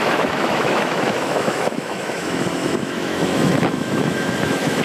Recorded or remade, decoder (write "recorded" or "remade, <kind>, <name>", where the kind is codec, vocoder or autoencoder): remade, autoencoder, DAC-VAE